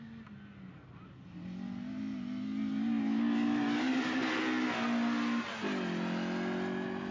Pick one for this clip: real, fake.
real